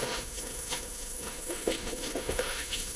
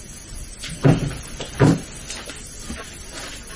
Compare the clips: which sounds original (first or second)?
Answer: second